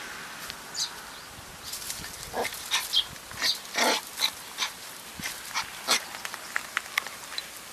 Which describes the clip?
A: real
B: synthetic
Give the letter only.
A